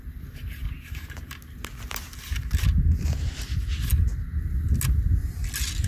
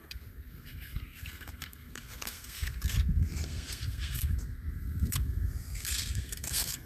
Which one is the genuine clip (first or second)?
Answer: first